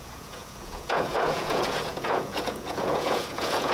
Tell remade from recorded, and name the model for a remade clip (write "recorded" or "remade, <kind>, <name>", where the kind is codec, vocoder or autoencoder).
remade, vocoder, Vocos